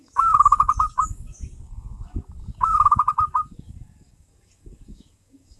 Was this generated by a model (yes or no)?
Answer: yes